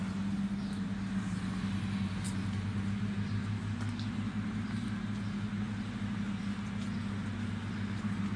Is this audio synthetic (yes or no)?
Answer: no